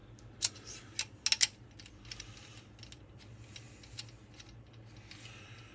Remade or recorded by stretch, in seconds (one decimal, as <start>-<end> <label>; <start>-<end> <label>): 0.0-5.7 recorded